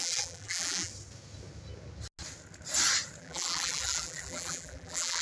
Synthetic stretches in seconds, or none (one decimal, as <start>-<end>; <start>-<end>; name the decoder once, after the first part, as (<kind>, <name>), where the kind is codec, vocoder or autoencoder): 0.0-0.9 (vocoder, BigVGAN v2); 3.2-5.2